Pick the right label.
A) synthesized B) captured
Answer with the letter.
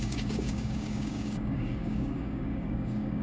A